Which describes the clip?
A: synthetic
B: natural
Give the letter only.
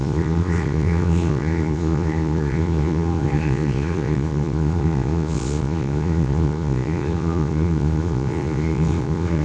A